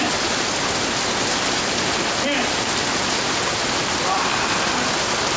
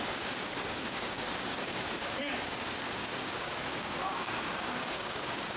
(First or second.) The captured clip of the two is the first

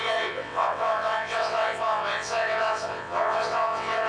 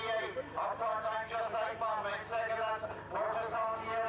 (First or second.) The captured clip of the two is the second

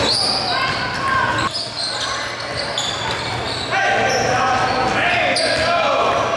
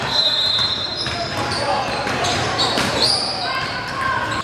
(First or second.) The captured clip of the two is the first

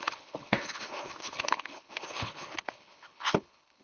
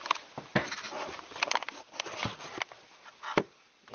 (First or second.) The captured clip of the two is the second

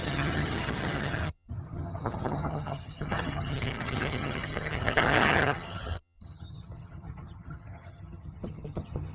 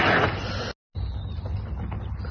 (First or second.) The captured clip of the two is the second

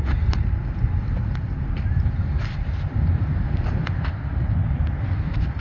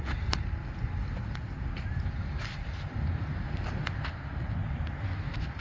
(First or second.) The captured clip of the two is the second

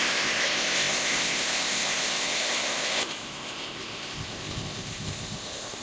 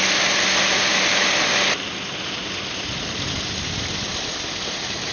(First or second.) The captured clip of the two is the second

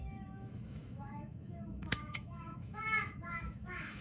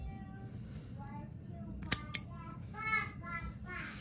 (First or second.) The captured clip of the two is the second